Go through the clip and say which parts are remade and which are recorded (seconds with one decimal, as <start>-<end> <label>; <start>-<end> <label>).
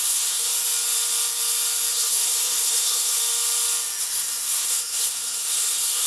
0.0-0.5 remade; 0.5-1.9 recorded; 1.9-3.2 remade; 3.2-4.0 recorded; 4.0-6.1 remade